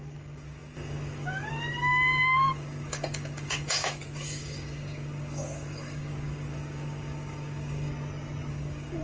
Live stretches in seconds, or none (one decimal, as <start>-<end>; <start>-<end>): 7.9-8.5